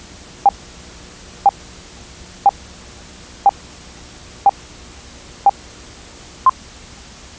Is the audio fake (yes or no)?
no